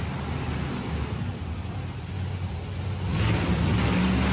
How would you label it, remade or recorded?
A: recorded